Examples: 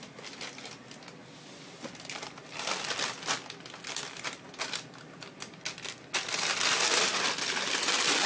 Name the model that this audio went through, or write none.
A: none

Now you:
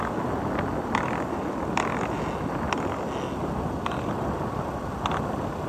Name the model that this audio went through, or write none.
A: none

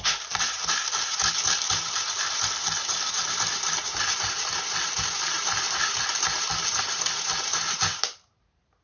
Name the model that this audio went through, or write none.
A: vocoder, BigVGAN v2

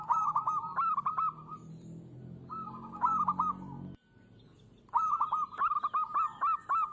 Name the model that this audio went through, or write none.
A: none